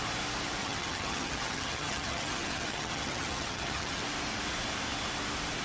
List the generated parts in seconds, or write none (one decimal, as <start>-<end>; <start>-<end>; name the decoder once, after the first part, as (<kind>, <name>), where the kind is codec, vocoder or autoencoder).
0.6-4.0 (vocoder, HiFi-GAN)